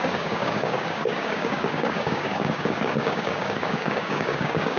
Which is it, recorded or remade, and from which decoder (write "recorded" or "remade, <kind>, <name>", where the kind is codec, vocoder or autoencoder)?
remade, codec, DAC